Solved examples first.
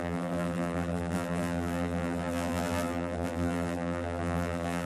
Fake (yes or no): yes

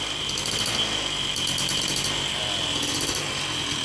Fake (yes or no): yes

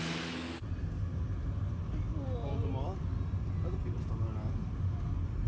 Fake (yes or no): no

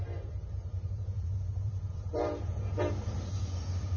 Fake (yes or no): yes